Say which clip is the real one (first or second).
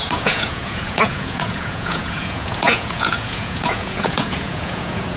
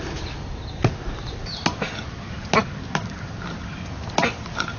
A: second